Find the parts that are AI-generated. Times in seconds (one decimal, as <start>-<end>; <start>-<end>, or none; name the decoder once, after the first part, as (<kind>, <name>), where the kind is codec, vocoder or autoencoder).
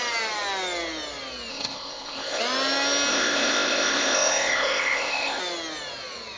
1.5-2.4 (codec, ZipCodec); 3.1-5.4